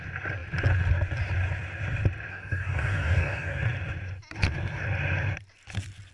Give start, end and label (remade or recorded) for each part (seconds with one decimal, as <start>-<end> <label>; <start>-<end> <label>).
0.0-2.3 recorded; 2.3-3.6 remade; 3.6-6.1 recorded